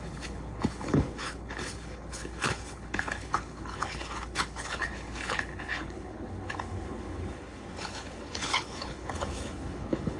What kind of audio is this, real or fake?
fake